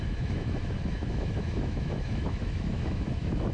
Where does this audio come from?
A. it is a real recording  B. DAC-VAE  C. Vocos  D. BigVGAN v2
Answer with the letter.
B